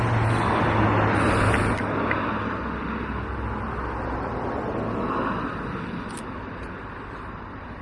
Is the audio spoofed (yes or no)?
no